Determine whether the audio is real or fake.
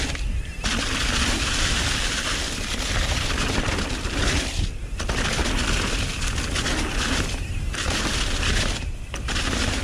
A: real